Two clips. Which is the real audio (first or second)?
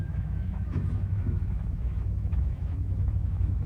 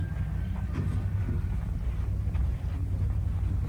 second